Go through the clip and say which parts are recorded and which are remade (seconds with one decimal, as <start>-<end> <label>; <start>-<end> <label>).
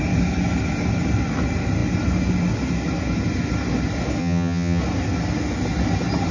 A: 0.0-4.2 recorded; 4.2-4.8 remade; 4.8-6.3 recorded